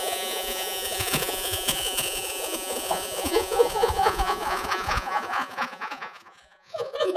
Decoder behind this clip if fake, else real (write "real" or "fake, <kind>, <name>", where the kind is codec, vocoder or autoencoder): fake, vocoder, Vocos